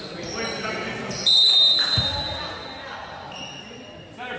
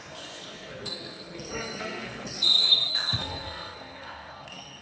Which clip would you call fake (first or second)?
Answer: second